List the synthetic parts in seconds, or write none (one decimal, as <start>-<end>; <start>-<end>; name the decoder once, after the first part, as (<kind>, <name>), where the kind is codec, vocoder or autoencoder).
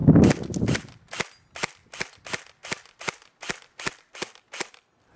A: none